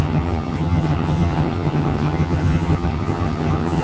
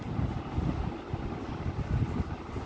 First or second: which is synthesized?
first